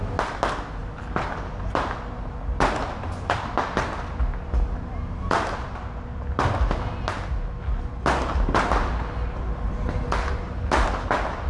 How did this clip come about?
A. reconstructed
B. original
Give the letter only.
B